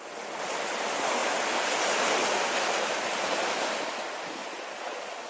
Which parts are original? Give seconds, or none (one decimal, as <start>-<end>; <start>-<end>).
0.0-4.4